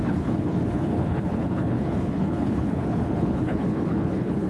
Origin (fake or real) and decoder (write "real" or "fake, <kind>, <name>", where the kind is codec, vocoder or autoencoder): fake, codec, HILCodec